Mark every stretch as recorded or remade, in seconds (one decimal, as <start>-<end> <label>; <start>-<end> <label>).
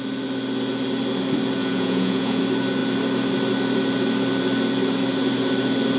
0.0-1.6 recorded; 1.6-2.4 remade; 2.4-6.0 recorded